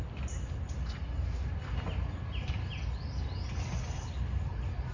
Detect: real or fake real